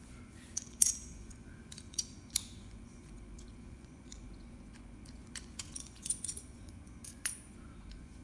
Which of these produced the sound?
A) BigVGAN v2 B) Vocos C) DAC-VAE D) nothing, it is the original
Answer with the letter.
B